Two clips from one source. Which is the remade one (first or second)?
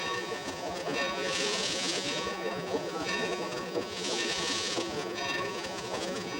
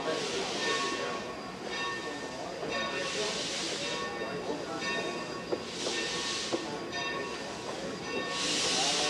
first